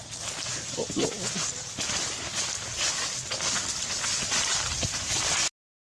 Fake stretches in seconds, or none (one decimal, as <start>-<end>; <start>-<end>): none